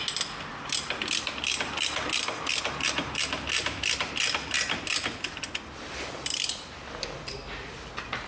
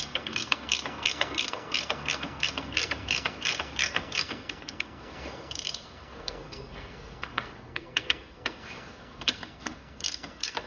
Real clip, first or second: first